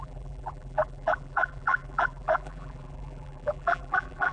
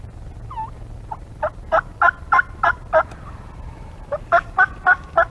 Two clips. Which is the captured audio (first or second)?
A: second